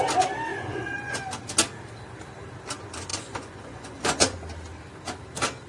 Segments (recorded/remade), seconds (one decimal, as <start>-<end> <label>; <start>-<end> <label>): 0.0-0.5 recorded; 0.5-1.2 remade; 1.2-3.1 recorded; 3.1-4.4 remade; 4.4-5.7 recorded